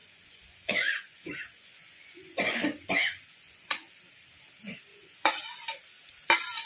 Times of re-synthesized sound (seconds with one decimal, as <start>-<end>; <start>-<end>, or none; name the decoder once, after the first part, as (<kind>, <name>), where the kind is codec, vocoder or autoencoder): 0.0-4.0 (vocoder, Vocos); 4.9-5.4